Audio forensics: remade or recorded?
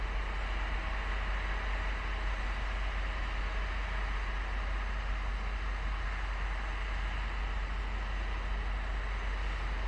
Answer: recorded